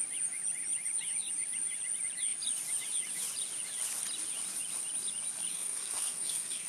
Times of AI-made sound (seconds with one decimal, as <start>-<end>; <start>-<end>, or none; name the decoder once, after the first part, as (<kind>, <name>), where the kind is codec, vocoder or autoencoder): 5.5-6.7 (codec, SNAC)